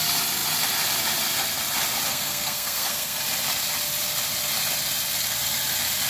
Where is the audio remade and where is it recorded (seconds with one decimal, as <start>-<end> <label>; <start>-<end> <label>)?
0.0-2.1 recorded; 2.1-3.2 remade; 3.2-6.1 recorded